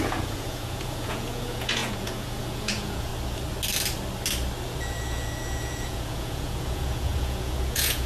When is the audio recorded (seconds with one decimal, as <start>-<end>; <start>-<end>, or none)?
3.1-4.8